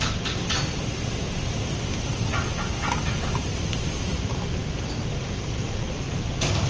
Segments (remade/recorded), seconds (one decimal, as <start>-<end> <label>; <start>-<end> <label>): 0.0-3.5 recorded; 3.5-4.1 remade; 4.1-6.7 recorded